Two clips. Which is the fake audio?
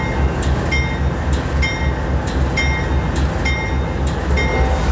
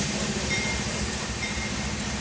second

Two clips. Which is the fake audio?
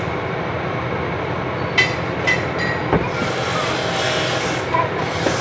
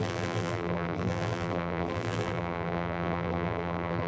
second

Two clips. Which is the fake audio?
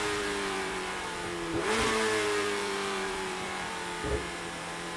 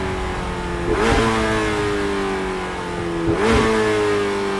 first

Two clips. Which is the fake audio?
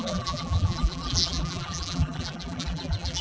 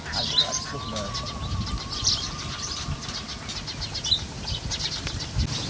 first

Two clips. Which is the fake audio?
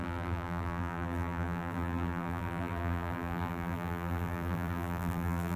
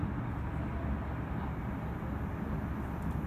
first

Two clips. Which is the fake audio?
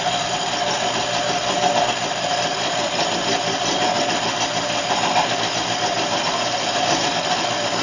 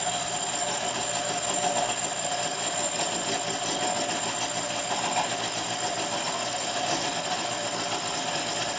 first